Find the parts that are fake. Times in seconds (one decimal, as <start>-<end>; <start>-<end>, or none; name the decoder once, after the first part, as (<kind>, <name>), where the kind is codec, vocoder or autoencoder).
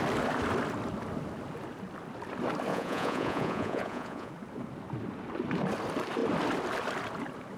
2.7-4.3 (vocoder, Vocos)